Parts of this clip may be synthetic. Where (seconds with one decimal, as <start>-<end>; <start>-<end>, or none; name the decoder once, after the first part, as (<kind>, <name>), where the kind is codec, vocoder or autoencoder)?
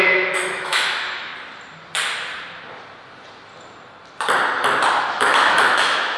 0.0-1.3 (autoencoder, DAC-VAE); 5.0-6.2